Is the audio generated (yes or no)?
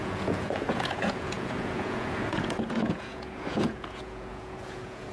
yes